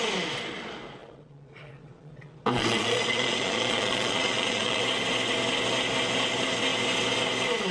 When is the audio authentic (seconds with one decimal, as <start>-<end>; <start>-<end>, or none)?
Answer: 0.0-1.0; 4.8-7.7